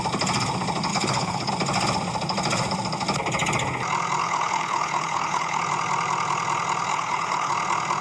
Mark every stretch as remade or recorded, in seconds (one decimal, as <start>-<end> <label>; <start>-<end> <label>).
0.0-0.9 recorded; 0.9-1.5 remade; 1.5-4.2 recorded; 4.2-5.6 remade; 5.6-6.9 recorded; 6.9-7.5 remade; 7.5-8.0 recorded